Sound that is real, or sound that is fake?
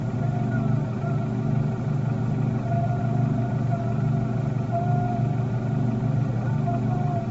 real